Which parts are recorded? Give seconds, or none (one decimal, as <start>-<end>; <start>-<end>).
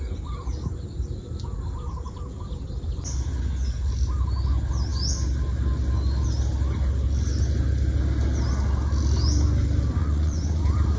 0.0-10.0; 10.6-11.0